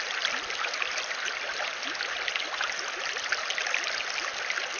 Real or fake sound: real